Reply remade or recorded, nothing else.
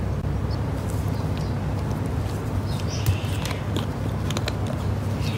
recorded